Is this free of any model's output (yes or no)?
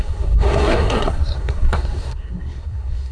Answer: no